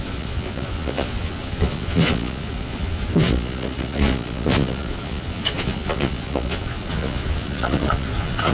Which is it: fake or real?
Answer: fake